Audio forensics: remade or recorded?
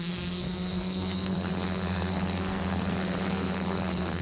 remade